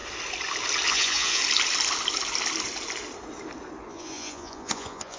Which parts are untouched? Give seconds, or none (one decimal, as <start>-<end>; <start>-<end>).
0.0-0.9; 1.4-3.9